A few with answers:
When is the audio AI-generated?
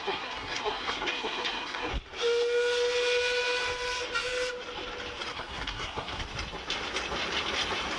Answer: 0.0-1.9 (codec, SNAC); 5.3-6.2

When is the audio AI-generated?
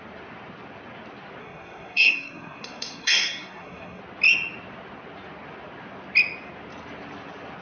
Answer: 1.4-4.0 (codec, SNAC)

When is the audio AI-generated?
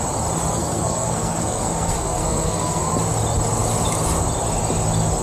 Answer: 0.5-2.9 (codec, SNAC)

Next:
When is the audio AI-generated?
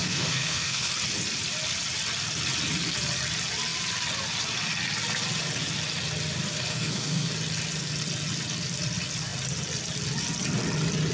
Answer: 0.0-0.9 (codec, SNAC); 6.7-7.3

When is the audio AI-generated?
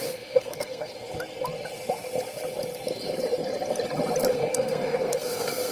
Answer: 0.0-0.9 (codec, SNAC); 4.3-5.7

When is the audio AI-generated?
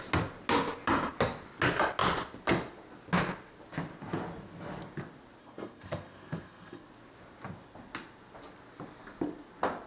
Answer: 5.4-6.8 (codec, SNAC)